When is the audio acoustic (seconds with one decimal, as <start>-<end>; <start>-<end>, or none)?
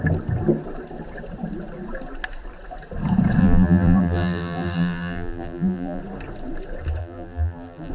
0.0-3.4; 6.0-7.0